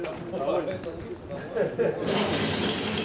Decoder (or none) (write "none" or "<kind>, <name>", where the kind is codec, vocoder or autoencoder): none